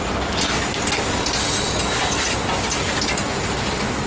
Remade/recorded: recorded